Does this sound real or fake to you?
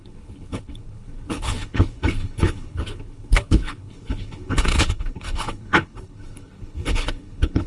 fake